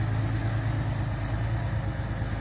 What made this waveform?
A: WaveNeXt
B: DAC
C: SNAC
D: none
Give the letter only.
D